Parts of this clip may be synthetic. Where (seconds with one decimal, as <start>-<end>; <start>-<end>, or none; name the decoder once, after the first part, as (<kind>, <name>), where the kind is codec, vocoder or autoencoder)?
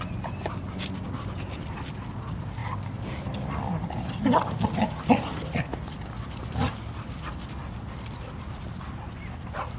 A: none